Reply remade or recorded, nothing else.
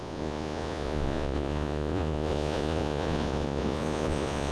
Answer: remade